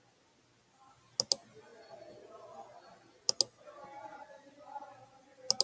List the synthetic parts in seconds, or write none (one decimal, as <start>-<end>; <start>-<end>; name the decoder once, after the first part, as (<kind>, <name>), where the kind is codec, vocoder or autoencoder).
3.9-4.8 (vocoder, BigVGAN v2)

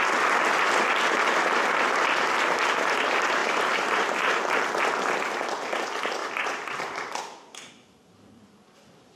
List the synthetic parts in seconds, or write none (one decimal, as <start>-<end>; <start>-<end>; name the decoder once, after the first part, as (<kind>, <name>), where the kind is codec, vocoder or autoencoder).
3.4-4.6 (vocoder, BigVGAN v2); 6.2-7.7

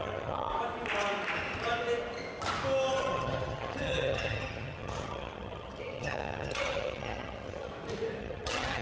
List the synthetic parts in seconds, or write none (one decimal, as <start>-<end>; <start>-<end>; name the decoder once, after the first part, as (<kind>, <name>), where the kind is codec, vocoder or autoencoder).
0.0-0.5 (vocoder, HiFi-GAN); 3.0-7.7; 8.2-8.8

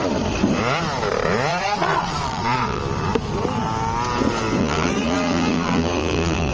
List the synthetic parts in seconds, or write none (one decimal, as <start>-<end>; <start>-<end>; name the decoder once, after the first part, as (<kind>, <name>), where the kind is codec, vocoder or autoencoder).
1.5-2.8 (vocoder, Vocos); 4.6-6.5

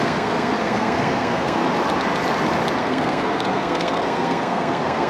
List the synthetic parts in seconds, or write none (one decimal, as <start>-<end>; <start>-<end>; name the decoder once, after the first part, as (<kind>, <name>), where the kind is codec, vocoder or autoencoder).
0.0-1.6 (codec, SNAC); 2.8-5.1

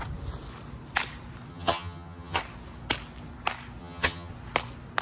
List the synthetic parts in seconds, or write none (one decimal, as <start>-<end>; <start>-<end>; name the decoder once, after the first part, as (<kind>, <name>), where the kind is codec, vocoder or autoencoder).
1.5-2.4 (vocoder, HiFi-GAN); 3.8-4.3

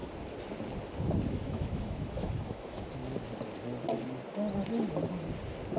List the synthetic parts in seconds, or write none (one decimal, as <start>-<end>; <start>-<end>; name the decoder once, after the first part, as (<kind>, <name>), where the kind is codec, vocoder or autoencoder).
1.3-3.0 (autoencoder, DAC-VAE)

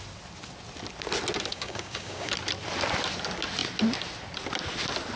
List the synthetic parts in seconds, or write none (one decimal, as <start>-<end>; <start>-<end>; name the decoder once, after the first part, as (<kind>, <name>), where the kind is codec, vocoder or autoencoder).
1.5-2.3 (codec, DAC)